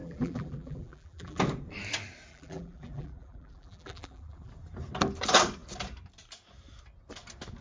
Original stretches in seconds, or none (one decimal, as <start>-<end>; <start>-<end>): 1.4-2.3; 4.5-7.6